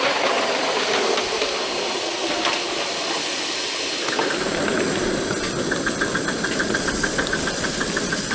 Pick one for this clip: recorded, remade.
recorded